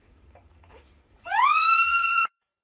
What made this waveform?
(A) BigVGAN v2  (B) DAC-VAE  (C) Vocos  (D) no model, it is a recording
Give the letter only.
C